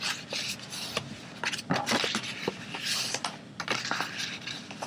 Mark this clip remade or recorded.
recorded